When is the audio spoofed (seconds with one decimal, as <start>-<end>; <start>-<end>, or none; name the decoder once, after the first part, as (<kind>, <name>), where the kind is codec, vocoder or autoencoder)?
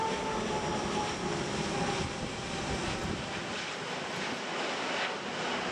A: none